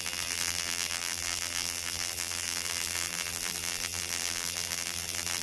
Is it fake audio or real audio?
fake